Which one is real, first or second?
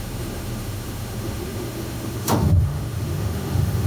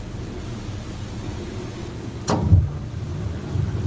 second